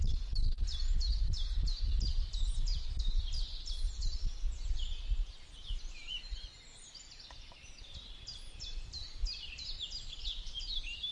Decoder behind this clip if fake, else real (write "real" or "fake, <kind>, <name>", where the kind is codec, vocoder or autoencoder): fake, vocoder, BigVGAN v2